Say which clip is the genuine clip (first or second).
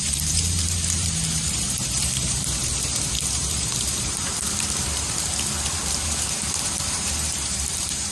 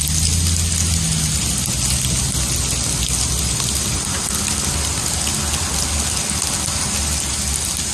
second